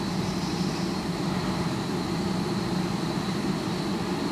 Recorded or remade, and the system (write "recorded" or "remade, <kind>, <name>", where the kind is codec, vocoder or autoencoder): recorded